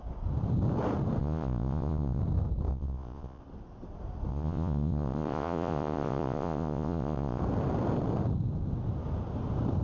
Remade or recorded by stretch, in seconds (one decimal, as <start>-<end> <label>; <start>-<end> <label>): 0.0-1.2 recorded; 1.2-2.2 remade; 2.2-2.7 recorded; 2.7-3.4 remade; 3.4-4.3 recorded; 4.3-7.4 remade; 7.4-9.8 recorded